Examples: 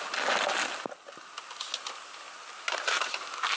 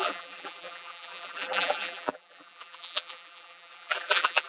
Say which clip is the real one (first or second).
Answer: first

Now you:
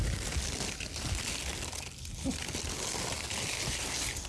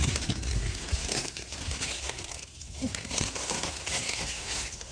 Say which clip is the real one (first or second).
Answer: first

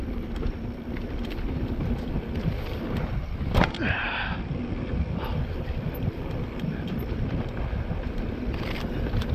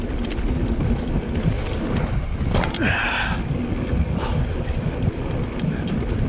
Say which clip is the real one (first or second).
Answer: second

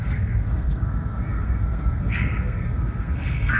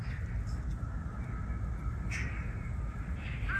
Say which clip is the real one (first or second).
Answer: second